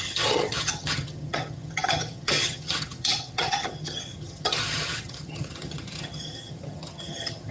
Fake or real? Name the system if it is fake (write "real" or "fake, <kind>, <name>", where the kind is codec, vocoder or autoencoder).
fake, vocoder, HiFi-GAN